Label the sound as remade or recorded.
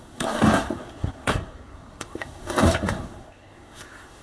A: remade